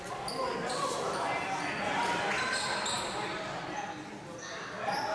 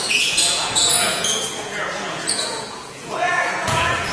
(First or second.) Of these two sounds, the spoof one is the second